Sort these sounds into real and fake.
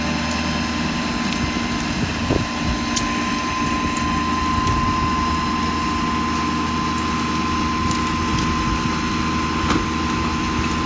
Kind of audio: real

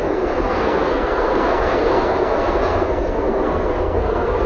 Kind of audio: fake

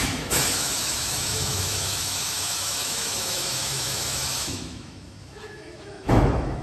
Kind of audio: fake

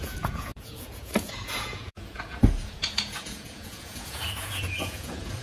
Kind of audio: fake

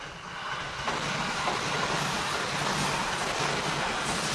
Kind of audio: real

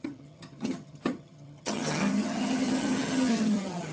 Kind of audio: fake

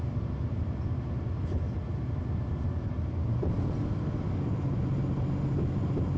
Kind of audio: real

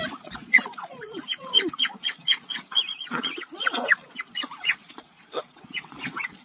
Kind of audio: fake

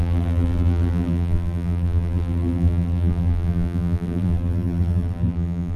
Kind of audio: fake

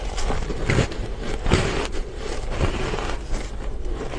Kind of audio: real